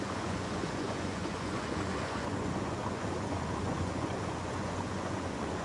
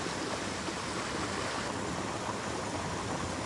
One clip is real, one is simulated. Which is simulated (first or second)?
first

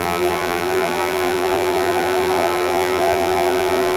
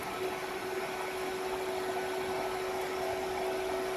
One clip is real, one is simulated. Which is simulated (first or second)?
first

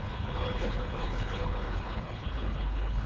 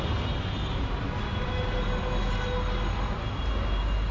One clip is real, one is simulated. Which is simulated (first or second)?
first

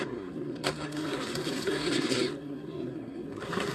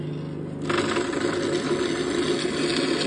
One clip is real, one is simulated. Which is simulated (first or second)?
first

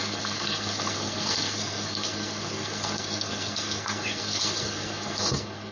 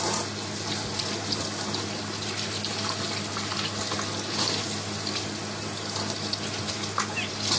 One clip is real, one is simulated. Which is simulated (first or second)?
first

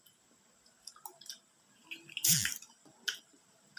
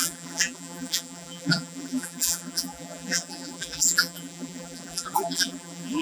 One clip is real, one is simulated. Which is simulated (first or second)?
second